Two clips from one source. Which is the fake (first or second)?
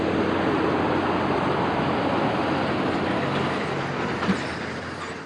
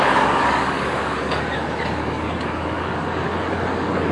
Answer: second